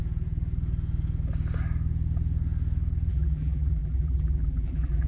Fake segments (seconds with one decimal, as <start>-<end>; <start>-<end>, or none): 3.1-5.1